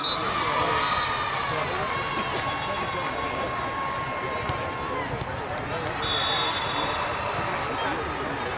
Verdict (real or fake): real